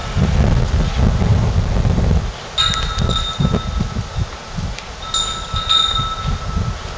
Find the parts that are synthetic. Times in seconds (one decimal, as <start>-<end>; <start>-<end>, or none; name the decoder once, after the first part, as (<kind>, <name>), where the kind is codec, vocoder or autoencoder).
none